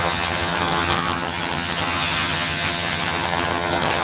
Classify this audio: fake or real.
fake